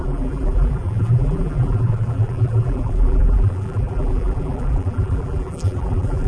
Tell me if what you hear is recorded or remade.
remade